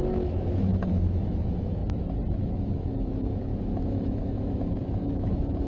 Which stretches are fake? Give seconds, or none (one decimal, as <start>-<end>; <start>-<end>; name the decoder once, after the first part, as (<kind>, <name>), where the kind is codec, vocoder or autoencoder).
0.0-1.8 (autoencoder, DAC-VAE); 2.4-5.7